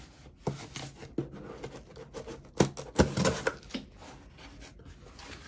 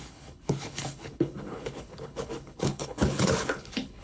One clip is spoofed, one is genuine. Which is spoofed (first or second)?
second